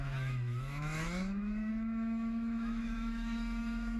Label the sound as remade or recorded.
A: remade